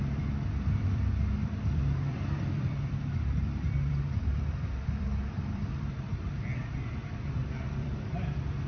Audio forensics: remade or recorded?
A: remade